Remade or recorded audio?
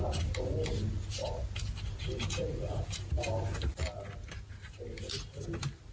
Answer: recorded